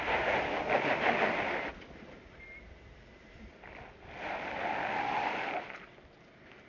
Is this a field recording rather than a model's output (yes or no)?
yes